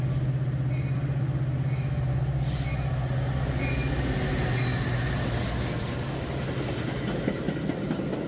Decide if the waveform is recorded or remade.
recorded